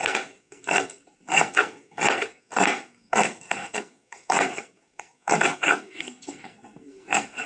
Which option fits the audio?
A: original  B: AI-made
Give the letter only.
B